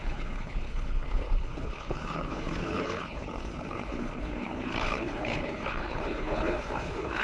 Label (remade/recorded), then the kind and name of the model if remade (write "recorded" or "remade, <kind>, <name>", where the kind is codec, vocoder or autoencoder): remade, codec, HILCodec